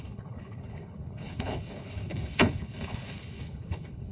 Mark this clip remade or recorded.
remade